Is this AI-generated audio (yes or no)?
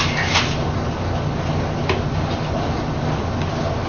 no